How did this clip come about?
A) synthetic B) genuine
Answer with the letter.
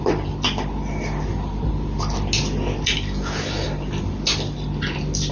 B